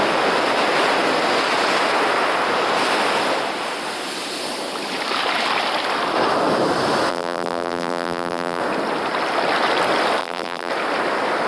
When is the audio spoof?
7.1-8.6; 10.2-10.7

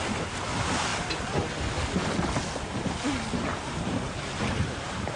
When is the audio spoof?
0.9-1.5; 3.5-5.2

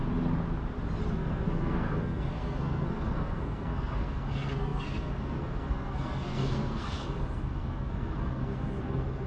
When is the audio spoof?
1.1-9.3

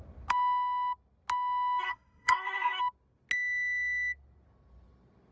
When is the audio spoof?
1.8-2.8

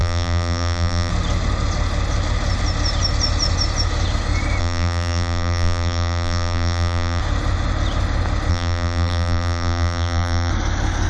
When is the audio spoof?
0.0-1.1; 4.6-7.2; 8.5-10.5

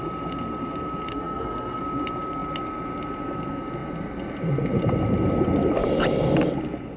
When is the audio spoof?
1.1-1.8